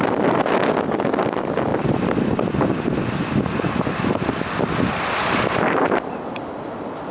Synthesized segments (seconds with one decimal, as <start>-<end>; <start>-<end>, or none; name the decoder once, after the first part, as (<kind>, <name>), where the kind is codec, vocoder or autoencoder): none

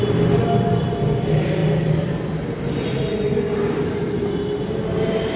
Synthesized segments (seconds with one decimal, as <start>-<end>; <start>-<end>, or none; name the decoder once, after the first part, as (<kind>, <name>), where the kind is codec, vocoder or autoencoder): none

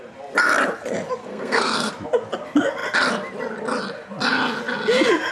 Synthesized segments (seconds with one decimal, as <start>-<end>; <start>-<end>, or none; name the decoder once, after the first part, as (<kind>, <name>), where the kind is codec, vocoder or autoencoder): 1.2-1.9 (codec, SNAC)

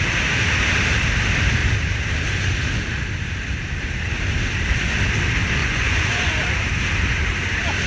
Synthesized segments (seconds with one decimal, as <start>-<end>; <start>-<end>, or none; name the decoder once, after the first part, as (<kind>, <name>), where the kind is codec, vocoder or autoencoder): 5.6-6.3 (vocoder, Vocos)